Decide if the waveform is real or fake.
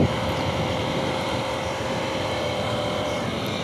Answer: fake